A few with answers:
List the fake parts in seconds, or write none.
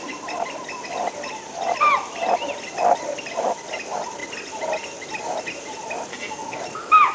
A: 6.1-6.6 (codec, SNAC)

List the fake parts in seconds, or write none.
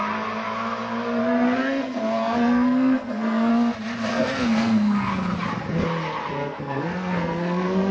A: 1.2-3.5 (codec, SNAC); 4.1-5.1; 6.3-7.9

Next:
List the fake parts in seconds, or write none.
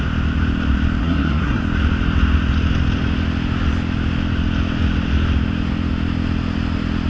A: 1.0-1.6 (codec, SNAC)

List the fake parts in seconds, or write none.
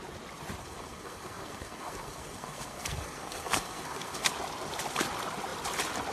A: 0.6-4.3 (codec, SNAC)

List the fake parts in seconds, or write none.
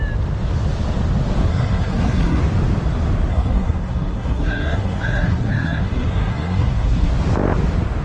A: 1.5-2.4 (codec, SNAC); 3.3-7.1